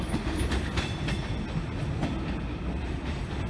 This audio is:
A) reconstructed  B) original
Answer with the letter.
B